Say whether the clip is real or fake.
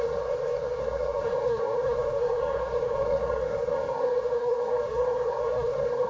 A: fake